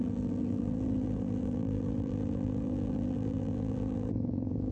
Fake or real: fake